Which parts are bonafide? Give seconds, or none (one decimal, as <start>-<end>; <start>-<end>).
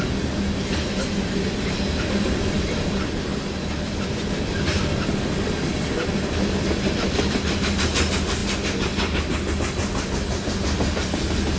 0.0-11.6